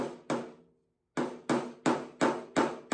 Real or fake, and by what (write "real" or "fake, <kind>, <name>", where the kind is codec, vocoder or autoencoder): real